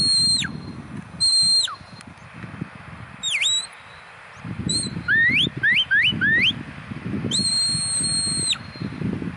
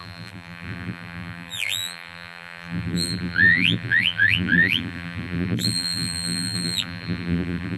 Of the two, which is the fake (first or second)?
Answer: second